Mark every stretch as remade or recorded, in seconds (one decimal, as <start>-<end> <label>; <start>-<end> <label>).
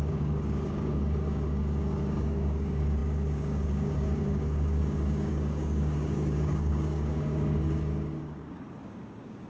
0.0-9.5 remade